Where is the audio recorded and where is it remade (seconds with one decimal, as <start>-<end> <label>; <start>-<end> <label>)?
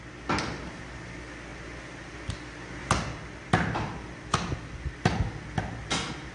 0.0-6.3 recorded